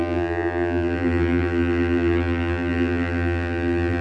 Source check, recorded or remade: remade